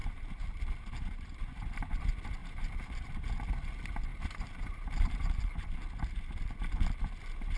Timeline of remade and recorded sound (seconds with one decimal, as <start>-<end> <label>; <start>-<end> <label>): 0.0-1.7 remade; 1.7-2.4 recorded; 2.4-3.3 remade; 3.3-4.1 recorded; 4.1-5.4 remade; 5.4-7.6 recorded